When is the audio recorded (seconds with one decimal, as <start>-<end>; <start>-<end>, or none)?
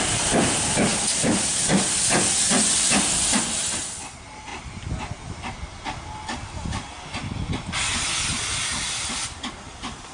0.0-10.1